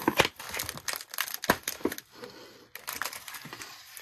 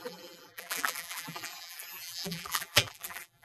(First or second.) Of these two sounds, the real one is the first